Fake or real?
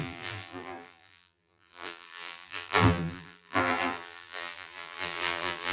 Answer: fake